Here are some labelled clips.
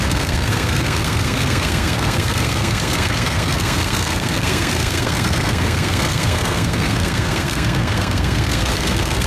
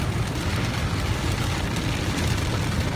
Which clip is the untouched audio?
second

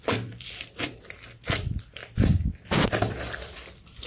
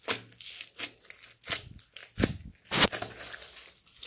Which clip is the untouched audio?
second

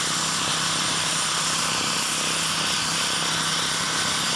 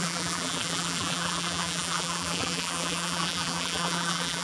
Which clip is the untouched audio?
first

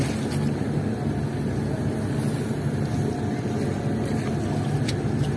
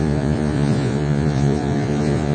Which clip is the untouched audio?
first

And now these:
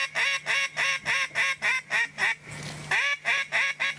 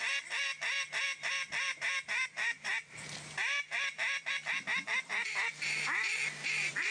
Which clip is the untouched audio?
first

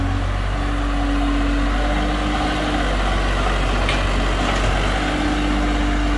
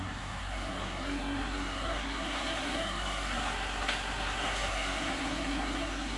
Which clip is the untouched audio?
first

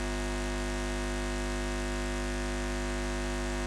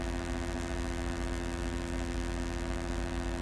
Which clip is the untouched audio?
first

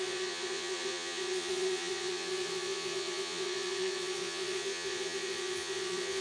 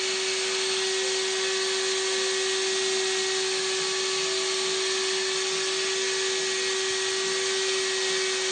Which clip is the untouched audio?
second